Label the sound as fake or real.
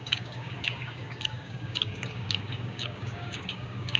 fake